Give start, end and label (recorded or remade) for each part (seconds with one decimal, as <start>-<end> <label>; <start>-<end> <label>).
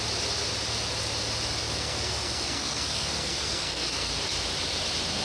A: 0.0-1.6 recorded; 1.6-4.1 remade; 4.1-5.2 recorded